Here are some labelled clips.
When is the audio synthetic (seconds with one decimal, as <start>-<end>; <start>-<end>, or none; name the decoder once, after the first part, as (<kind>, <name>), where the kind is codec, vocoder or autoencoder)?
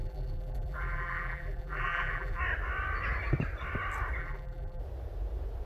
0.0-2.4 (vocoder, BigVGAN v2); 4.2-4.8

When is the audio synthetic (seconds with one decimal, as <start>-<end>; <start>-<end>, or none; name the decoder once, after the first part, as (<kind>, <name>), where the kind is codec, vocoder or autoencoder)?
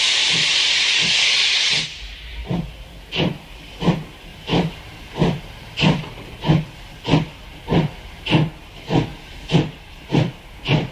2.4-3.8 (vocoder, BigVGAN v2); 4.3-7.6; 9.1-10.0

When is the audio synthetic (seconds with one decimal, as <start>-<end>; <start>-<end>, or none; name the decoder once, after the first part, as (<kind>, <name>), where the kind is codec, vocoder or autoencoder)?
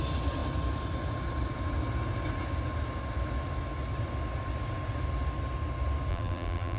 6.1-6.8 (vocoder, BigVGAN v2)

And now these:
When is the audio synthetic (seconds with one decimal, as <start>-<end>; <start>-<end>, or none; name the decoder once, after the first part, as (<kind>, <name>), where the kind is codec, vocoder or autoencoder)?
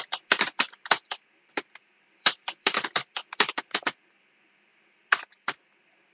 0.0-6.1 (vocoder, BigVGAN v2)